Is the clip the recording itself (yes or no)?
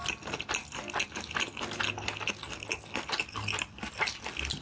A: yes